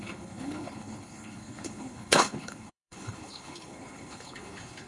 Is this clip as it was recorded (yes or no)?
no